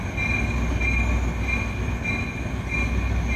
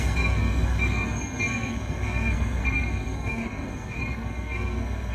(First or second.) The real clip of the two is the first